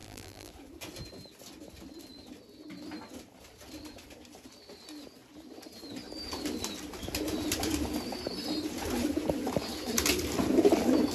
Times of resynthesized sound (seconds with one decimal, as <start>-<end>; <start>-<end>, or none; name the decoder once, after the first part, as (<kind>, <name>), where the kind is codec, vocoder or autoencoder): 0.0-0.5 (vocoder, BigVGAN v2)